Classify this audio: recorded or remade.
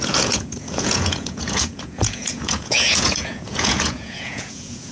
remade